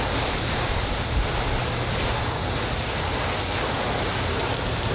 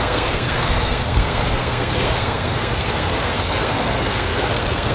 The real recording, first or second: first